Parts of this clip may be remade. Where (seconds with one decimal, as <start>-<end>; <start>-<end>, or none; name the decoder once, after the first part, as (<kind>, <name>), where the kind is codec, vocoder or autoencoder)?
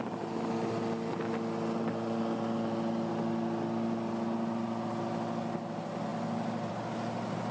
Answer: none